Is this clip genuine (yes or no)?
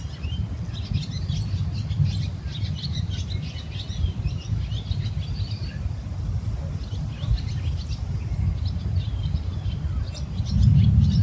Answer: yes